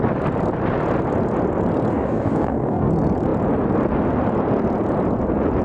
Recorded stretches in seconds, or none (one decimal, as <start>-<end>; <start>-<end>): 0.0-1.9; 2.9-5.6